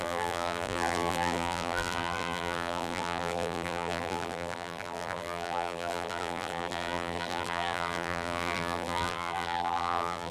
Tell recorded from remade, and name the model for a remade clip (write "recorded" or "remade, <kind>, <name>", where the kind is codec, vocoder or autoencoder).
remade, vocoder, BigVGAN v2